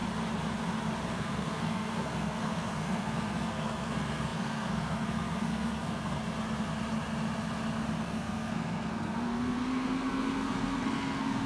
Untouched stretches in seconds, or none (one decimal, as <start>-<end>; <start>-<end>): 0.0-1.1; 6.2-8.0